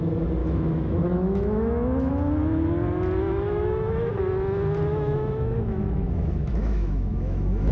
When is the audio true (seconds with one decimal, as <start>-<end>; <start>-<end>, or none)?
0.0-0.4; 2.1-3.2; 4.1-4.9